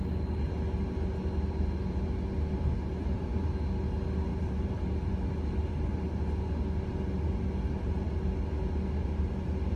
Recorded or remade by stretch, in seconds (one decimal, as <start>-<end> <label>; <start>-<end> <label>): 0.0-3.0 recorded; 3.0-3.5 remade; 3.5-4.3 recorded; 4.3-5.9 remade; 5.9-9.0 recorded; 9.0-9.8 remade